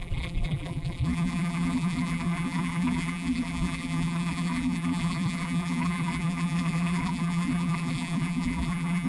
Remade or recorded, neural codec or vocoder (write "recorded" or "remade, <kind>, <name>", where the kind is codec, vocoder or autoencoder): remade, vocoder, BigVGAN v2